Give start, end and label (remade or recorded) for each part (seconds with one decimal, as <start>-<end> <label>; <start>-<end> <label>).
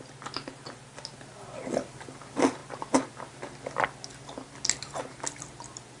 0.0-6.0 recorded